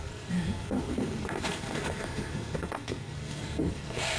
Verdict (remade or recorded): remade